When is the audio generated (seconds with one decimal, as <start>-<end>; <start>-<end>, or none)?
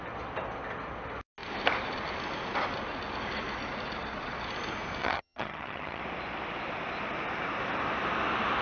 5.0-6.0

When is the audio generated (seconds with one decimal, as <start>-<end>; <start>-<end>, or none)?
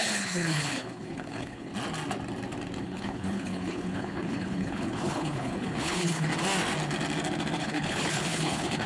0.0-1.7; 2.8-6.3; 7.6-8.9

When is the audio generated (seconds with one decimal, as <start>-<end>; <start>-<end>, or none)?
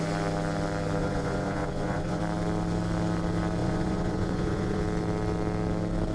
1.0-2.2; 3.6-4.8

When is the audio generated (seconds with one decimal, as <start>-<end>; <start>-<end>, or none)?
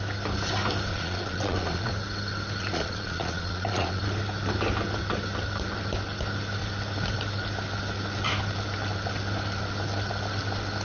0.9-1.9; 2.6-4.0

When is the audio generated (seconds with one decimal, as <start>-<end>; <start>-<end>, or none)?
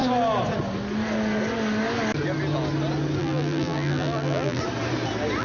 3.2-4.6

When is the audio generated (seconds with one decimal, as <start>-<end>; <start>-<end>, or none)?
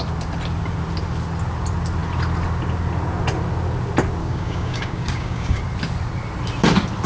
4.2-5.6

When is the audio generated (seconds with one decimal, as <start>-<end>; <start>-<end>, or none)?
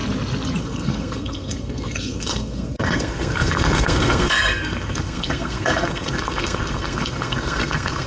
0.6-8.1